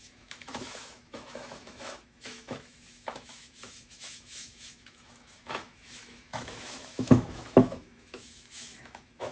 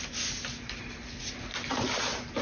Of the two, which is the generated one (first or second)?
first